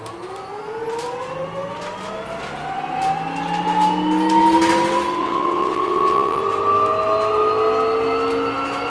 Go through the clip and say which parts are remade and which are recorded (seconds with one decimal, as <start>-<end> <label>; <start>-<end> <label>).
0.0-5.2 recorded; 5.2-6.4 remade; 6.4-8.9 recorded